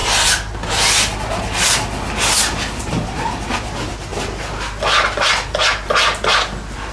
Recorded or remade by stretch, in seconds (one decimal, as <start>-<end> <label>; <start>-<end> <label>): 0.0-6.9 recorded